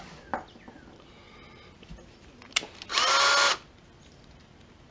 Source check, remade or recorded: recorded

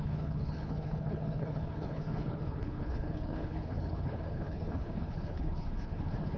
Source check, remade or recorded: remade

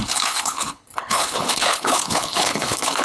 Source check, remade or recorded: remade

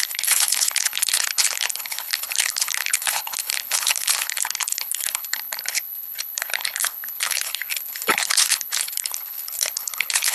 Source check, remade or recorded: remade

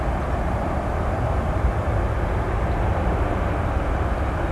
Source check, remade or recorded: recorded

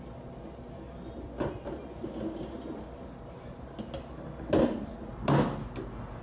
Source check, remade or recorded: recorded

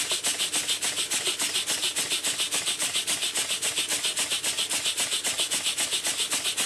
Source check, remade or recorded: recorded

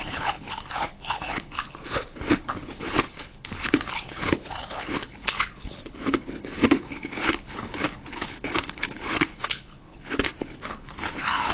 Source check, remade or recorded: remade